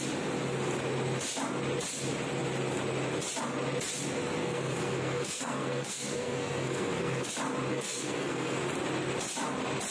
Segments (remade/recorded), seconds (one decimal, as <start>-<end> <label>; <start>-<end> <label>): 0.0-4.4 recorded; 4.4-7.3 remade; 7.3-7.7 recorded; 7.7-8.6 remade; 8.6-9.9 recorded